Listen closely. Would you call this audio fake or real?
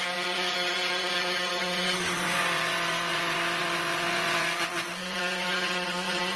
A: fake